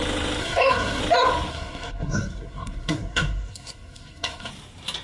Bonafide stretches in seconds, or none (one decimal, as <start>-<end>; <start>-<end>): 0.0-0.4; 1.0-1.5; 4.5-5.0

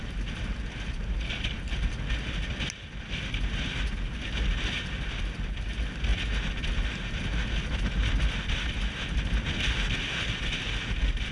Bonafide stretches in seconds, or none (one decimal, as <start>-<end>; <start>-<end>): 0.0-11.3

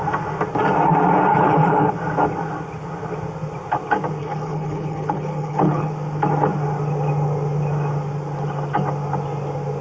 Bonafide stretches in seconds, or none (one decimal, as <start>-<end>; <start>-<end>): 0.0-1.3; 1.9-4.2; 5.9-9.8

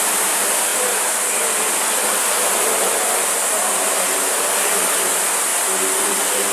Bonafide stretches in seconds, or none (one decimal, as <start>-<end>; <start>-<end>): 0.0-6.5